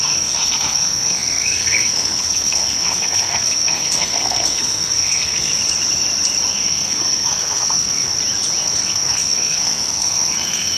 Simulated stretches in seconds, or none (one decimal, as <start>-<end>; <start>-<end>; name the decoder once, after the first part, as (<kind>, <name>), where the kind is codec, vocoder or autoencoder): 0.0-5.5 (codec, SNAC); 6.5-8.1; 8.6-10.8